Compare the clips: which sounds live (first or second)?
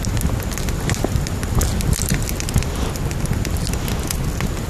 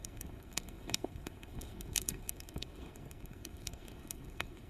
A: first